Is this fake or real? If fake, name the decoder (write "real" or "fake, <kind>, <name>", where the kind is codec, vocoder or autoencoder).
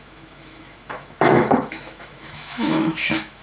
fake, autoencoder, DAC-VAE